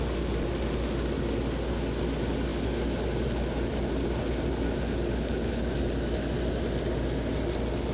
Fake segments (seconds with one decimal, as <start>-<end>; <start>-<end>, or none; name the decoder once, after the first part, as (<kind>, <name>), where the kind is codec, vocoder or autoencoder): none